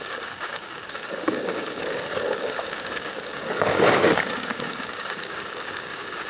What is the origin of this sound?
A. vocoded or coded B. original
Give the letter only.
A